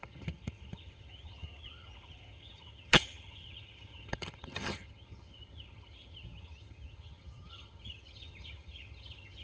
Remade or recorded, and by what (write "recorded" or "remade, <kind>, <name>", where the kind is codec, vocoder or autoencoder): remade, vocoder, HiFi-GAN